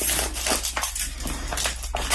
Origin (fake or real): real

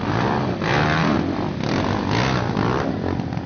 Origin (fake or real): real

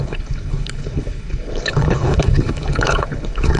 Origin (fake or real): fake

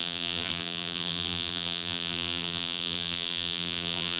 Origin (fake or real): fake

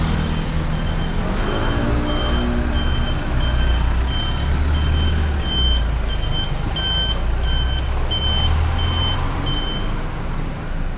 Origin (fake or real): real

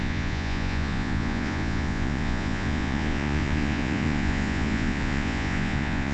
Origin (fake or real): fake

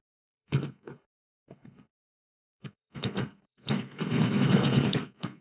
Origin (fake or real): fake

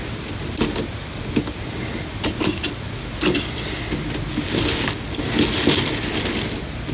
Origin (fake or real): real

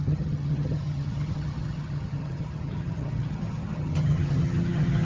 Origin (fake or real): fake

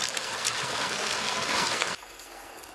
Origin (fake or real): fake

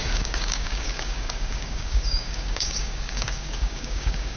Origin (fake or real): fake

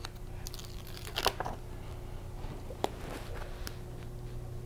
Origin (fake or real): real